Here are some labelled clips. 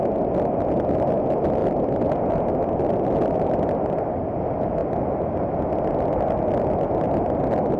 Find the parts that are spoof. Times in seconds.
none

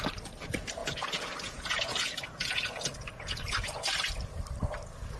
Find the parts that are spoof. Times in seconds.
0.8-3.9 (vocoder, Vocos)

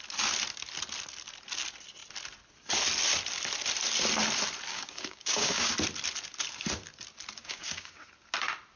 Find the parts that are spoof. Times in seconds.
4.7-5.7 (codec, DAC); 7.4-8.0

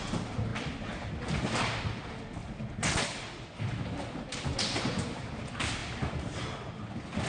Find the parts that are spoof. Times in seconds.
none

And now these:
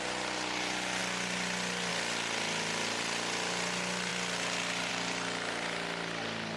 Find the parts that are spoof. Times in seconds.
none

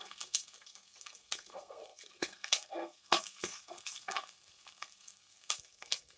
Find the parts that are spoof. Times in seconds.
0.0-6.2 (codec, SNAC)

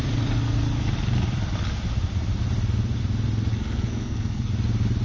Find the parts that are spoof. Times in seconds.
3.5-4.5 (codec, SNAC)

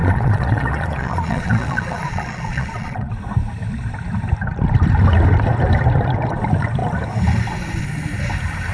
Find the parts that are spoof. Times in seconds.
0.0-3.1 (vocoder, Vocos)